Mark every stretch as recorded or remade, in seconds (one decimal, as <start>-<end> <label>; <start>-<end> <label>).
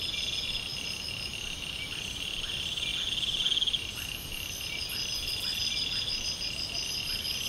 0.0-7.5 recorded